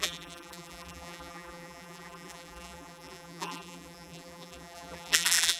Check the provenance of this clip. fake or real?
fake